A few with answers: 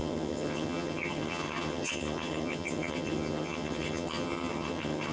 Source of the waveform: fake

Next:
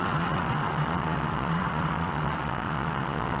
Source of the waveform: fake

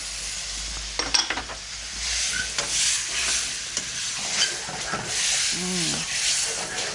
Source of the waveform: real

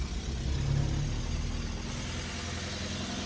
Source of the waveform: real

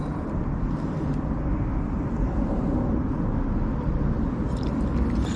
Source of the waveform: real